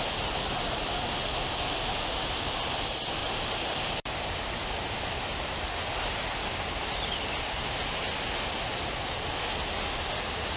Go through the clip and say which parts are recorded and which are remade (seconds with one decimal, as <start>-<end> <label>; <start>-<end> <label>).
0.0-3.2 recorded; 3.2-4.4 remade; 4.4-8.7 recorded; 8.7-9.3 remade; 9.3-10.6 recorded